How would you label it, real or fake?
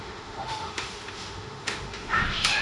fake